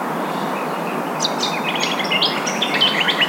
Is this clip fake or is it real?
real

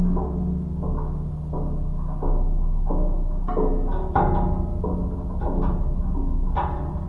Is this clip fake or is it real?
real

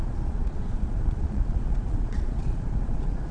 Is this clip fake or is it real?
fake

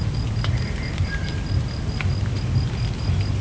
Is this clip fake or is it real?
real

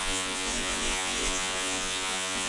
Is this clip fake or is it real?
fake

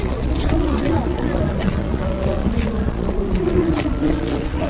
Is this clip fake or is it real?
fake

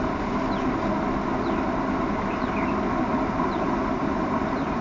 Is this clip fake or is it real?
real